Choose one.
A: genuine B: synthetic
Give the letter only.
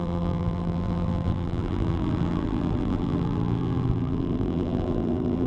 B